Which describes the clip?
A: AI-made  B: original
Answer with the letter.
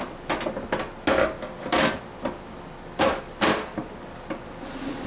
B